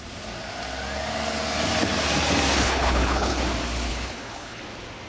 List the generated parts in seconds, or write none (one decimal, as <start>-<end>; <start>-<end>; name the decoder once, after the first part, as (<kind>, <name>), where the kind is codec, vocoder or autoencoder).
2.6-3.4 (codec, HILCodec); 3.9-4.6